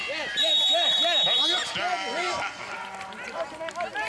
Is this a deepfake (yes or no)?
no